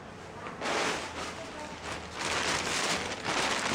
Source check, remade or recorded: recorded